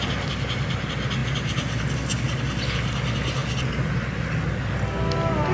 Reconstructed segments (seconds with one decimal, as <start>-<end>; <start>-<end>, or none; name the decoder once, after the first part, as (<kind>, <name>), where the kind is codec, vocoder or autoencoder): none